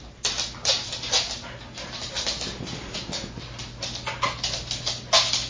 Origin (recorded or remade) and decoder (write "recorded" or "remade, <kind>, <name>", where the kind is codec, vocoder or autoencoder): recorded